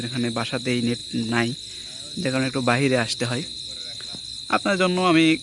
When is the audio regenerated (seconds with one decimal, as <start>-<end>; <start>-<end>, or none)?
none